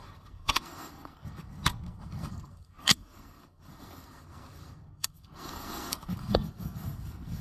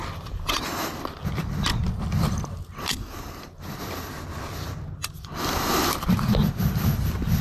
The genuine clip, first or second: second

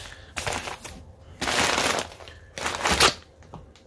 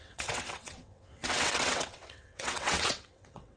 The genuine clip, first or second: first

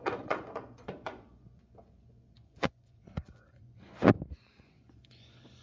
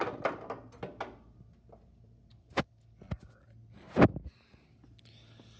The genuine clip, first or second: second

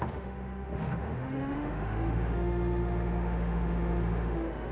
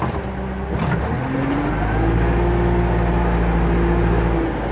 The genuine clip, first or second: second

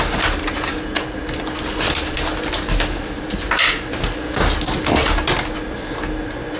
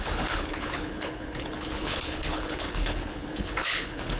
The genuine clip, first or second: first